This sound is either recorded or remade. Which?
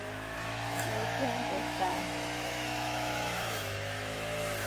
remade